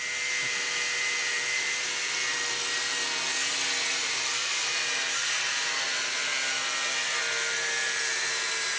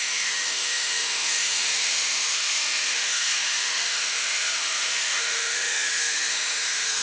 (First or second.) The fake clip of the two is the second